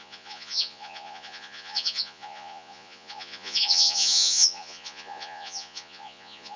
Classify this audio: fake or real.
fake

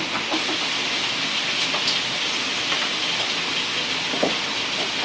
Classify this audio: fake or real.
real